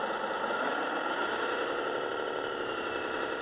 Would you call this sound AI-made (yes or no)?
yes